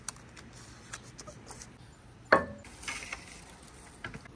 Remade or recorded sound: recorded